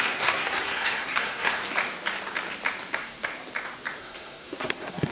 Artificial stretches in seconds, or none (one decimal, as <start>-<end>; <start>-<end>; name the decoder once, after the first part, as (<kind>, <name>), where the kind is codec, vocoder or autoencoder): 0.0-1.6 (codec, SNAC); 2.9-3.3; 4.0-5.1